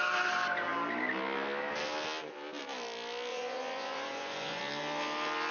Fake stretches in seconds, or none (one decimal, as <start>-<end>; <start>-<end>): 3.3-4.6